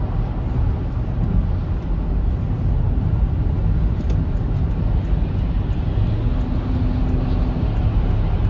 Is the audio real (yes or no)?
yes